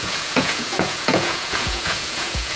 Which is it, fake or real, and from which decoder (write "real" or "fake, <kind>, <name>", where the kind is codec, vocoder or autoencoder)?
fake, vocoder, Vocos